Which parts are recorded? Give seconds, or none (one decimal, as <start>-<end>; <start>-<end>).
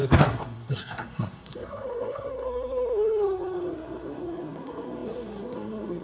none